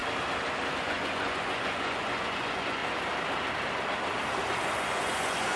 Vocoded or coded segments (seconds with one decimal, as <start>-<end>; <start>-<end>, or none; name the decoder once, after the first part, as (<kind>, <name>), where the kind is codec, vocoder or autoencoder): 0.8-2.8 (vocoder, Vocos); 4.5-5.6